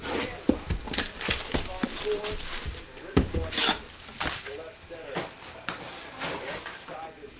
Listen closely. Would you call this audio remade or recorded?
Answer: recorded